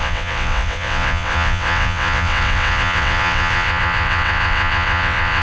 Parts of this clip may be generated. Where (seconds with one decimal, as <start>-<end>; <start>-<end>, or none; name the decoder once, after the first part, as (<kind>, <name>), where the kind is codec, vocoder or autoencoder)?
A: 0.0-5.4 (vocoder, WaveNeXt)